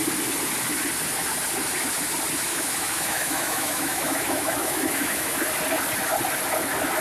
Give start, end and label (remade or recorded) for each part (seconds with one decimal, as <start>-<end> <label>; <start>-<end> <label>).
0.0-2.5 recorded; 2.5-5.4 remade; 5.4-7.0 recorded